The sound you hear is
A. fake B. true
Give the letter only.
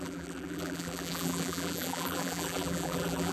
A